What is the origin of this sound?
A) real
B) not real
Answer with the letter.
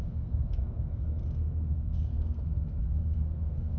B